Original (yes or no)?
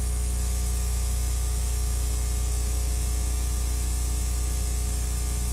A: no